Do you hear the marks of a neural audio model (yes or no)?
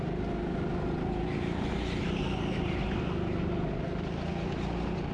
no